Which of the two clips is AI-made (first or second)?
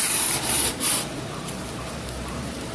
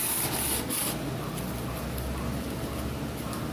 first